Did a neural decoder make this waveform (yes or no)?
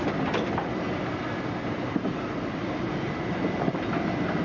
no